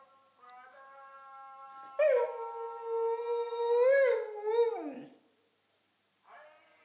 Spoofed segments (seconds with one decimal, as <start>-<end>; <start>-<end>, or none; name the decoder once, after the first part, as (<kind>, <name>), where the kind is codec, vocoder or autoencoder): none